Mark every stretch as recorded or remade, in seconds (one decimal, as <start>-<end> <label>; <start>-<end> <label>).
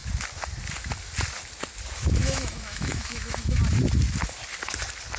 0.0-2.2 recorded; 2.2-3.6 remade; 3.6-5.2 recorded